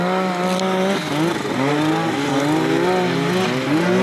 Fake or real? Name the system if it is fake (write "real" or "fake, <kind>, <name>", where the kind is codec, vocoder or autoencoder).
real